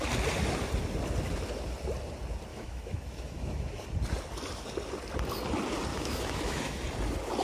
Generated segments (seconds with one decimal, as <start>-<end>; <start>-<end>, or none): 2.5-3.8; 5.9-6.8